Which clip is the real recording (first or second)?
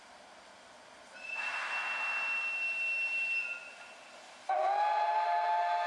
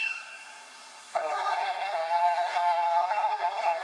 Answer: first